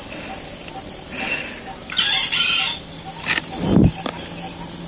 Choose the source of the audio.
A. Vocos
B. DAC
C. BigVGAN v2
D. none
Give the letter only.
D